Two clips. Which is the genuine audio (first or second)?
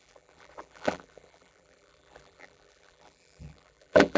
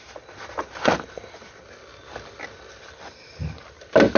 second